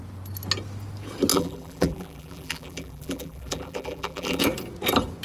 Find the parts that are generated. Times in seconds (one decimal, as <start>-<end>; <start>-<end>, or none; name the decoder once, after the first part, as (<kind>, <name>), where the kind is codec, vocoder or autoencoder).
1.3-4.4 (vocoder, BigVGAN v2)